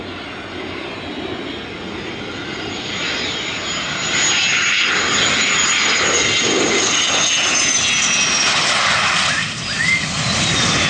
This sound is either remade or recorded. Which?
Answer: recorded